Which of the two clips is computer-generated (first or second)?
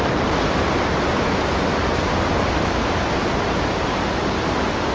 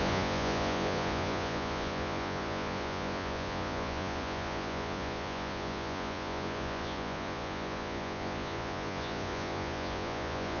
second